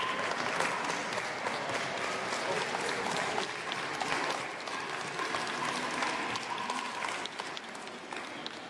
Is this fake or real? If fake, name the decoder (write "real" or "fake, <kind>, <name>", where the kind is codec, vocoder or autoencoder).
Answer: real